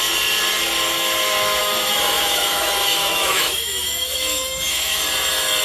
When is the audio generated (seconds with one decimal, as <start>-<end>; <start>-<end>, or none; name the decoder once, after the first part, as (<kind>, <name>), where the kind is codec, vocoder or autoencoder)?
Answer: 1.6-5.0 (autoencoder, DAC-VAE)